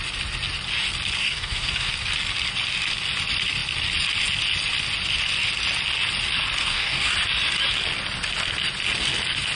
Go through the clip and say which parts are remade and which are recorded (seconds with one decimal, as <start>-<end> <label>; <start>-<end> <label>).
0.0-1.2 recorded; 1.2-1.9 remade; 1.9-6.6 recorded; 6.6-7.1 remade; 7.1-9.5 recorded